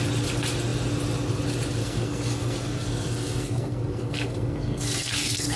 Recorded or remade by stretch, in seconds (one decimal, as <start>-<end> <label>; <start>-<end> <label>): 0.0-1.8 recorded; 1.8-5.6 remade